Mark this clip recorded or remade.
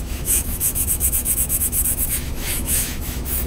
remade